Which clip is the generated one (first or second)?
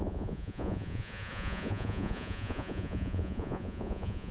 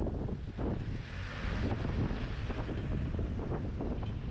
first